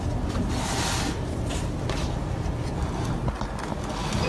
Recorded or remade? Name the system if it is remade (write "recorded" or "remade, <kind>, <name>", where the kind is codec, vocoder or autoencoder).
recorded